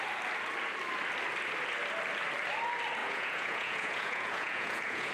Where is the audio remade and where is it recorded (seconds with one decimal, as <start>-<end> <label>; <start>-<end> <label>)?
0.0-3.0 recorded; 3.0-5.1 remade

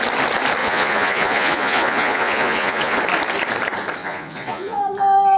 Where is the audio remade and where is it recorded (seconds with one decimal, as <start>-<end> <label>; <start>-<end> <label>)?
0.0-0.6 recorded; 0.6-3.0 remade; 3.0-4.0 recorded; 4.0-4.8 remade; 4.8-5.4 recorded